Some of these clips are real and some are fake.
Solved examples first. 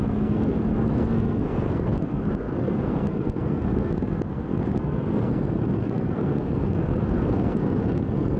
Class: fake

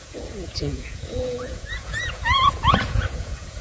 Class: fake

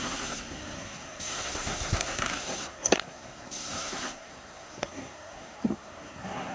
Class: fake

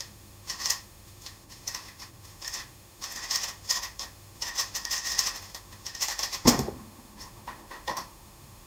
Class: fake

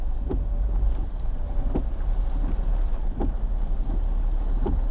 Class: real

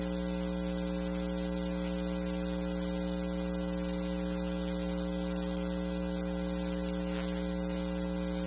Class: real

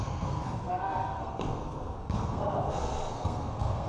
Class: fake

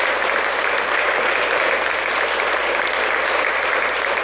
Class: real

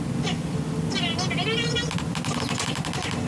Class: real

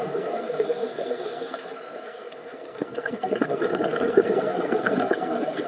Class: fake